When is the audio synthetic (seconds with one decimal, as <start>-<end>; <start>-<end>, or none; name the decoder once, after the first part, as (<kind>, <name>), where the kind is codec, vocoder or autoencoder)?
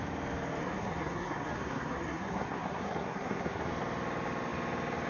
0.6-3.7 (codec, SNAC)